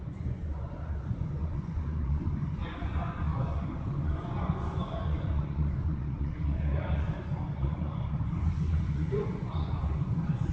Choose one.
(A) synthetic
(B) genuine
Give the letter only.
A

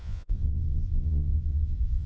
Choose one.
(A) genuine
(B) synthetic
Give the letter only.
B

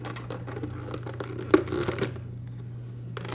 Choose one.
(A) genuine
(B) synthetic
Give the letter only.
A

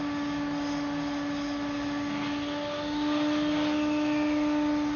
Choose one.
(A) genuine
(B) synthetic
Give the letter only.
A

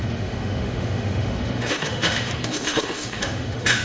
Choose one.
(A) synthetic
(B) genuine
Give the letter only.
A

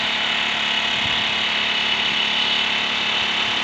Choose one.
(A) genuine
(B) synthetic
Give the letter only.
A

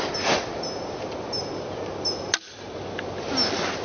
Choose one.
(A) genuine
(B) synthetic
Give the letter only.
A